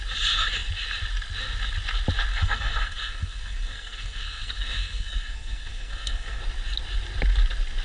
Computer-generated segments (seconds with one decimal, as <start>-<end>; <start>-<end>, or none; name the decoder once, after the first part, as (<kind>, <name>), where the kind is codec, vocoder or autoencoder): 2.3-6.4 (codec, SNAC)